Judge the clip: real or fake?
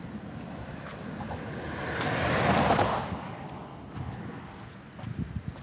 real